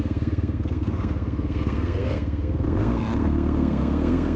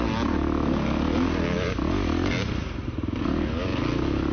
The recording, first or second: second